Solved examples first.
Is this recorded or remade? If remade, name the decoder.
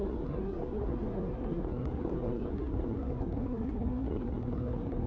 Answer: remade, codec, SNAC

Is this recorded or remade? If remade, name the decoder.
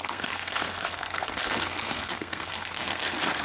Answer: remade, codec, SNAC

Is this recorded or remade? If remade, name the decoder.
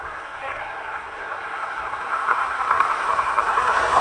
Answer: remade, codec, SNAC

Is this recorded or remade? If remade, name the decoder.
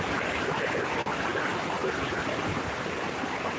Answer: recorded